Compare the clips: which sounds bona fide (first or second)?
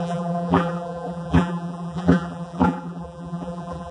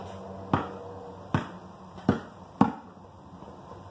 second